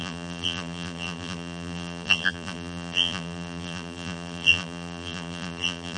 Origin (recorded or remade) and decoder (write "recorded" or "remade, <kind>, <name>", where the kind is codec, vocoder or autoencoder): remade, vocoder, BigVGAN v2